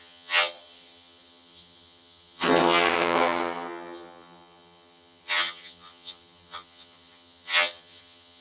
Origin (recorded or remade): remade